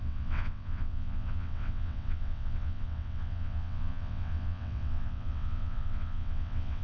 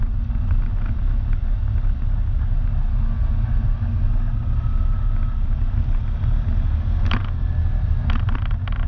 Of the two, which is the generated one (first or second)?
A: first